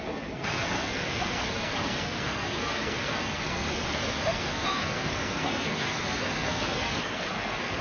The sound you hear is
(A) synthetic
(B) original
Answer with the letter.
A